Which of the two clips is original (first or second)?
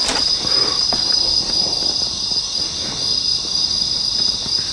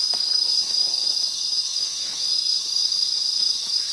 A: first